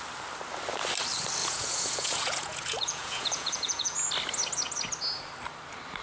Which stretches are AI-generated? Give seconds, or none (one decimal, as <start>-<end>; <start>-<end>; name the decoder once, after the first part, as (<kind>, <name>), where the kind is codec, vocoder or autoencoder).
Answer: 1.4-4.1 (vocoder, Vocos)